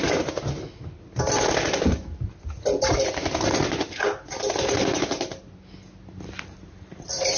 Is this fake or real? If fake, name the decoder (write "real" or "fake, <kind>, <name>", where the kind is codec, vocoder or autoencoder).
real